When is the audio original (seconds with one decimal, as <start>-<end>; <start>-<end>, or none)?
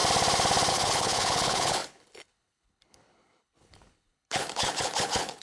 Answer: 0.0-0.7